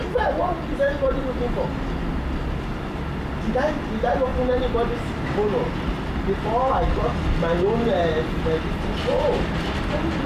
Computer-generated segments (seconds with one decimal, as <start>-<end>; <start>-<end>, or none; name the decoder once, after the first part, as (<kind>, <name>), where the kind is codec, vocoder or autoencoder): none